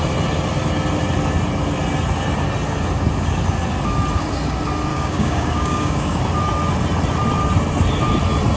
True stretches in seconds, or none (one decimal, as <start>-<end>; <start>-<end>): 0.0-4.9; 6.2-8.6